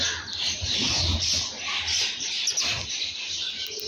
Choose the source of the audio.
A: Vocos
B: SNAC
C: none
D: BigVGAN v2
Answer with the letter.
C